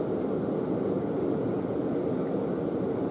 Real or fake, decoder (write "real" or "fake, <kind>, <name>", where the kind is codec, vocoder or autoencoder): real